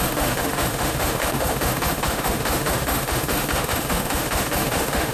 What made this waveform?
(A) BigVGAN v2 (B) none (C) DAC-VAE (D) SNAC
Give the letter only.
C